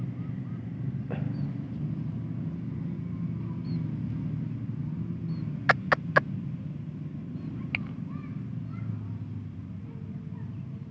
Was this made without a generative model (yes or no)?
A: yes